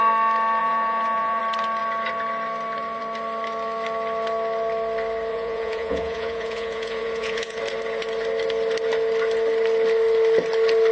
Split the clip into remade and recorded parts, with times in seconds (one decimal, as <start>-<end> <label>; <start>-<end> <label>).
0.0-0.6 recorded; 0.6-1.4 remade; 1.4-5.3 recorded; 5.3-7.6 remade; 7.6-10.9 recorded

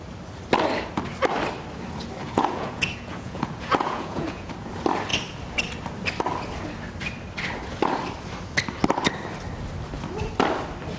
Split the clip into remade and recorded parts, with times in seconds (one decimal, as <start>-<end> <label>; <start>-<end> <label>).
0.0-2.2 recorded; 2.2-4.5 remade; 4.5-11.0 recorded